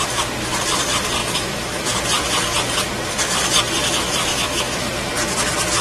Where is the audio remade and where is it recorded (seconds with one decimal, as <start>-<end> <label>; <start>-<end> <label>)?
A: 0.0-1.2 recorded; 1.2-1.8 remade; 1.8-4.3 recorded; 4.3-4.9 remade; 4.9-5.8 recorded